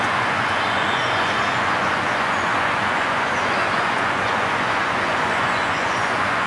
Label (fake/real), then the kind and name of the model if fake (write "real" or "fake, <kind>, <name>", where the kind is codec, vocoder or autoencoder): fake, vocoder, Vocos